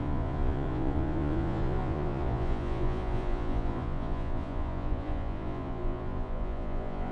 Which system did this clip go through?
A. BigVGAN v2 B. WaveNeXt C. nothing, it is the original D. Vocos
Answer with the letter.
D